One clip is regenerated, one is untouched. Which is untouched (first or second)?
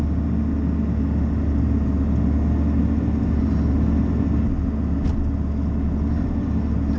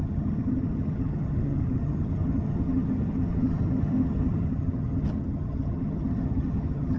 first